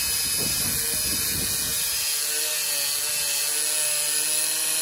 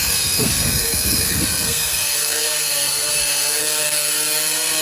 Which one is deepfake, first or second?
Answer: second